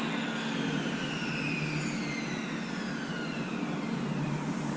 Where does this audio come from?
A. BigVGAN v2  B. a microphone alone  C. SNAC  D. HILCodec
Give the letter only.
B